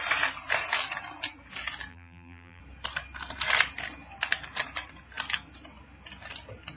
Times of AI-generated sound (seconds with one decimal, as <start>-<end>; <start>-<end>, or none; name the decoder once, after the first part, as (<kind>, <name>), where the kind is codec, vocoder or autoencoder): 1.9-2.6 (vocoder, BigVGAN v2)